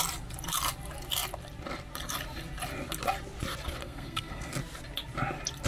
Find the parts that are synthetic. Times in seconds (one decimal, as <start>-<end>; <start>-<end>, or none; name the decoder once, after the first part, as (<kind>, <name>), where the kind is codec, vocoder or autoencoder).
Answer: 3.8-4.5 (codec, SNAC)